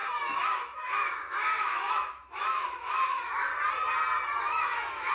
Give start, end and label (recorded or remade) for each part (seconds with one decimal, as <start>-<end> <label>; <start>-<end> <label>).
0.0-3.5 remade; 3.5-4.4 recorded; 4.4-5.1 remade